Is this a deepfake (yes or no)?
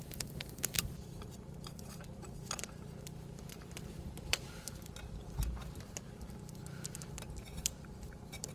yes